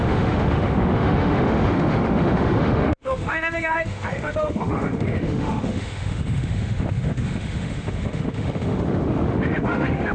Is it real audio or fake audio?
fake